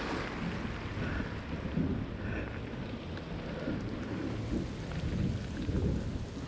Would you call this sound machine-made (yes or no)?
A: no